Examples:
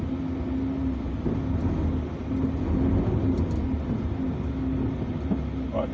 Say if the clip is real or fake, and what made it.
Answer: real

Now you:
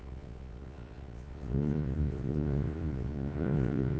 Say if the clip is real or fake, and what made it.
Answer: fake, vocoder, Vocos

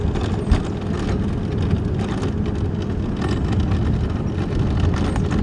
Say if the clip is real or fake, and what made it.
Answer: real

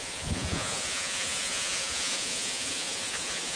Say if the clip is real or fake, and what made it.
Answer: fake, vocoder, Vocos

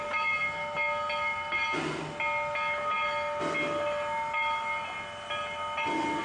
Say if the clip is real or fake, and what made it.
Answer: real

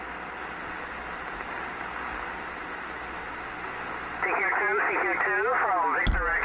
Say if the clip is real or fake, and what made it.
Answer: real